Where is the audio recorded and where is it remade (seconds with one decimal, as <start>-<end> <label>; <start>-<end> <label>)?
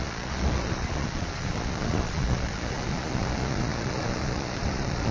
0.0-5.1 remade